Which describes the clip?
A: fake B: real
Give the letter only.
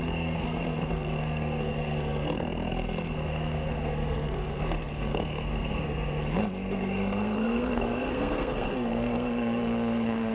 A